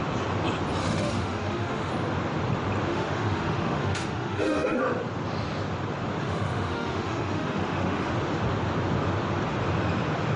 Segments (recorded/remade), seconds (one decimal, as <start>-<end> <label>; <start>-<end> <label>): 0.0-0.8 recorded; 0.8-1.9 remade; 1.9-2.9 recorded; 2.9-4.8 remade; 4.8-6.2 recorded; 6.2-8.1 remade; 8.1-10.4 recorded